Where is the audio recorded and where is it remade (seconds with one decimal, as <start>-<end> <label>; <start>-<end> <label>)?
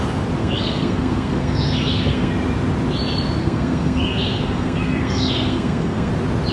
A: 0.0-0.4 recorded; 0.4-2.3 remade; 2.3-3.4 recorded; 3.4-6.1 remade; 6.1-6.5 recorded